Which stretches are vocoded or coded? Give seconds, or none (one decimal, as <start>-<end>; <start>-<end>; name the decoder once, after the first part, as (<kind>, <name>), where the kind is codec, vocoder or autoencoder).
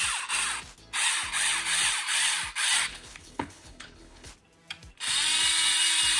2.9-4.3 (codec, HILCodec)